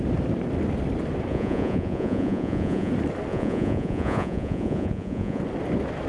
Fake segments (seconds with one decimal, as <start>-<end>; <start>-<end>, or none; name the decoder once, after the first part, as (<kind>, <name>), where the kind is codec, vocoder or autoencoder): 1.3-2.9 (vocoder, Vocos); 3.3-5.4